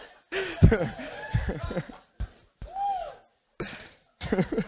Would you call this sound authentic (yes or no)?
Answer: yes